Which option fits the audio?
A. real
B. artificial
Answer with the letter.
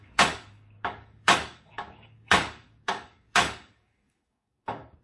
B